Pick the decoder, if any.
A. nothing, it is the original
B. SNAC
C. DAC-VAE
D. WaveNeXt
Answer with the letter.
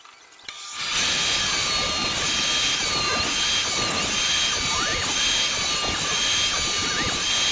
A